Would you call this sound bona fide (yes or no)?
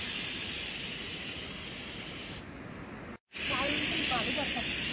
yes